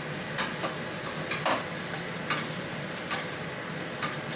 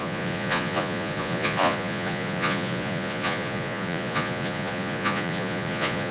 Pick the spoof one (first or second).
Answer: second